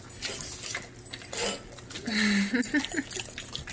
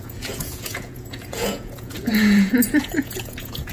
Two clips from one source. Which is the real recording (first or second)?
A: first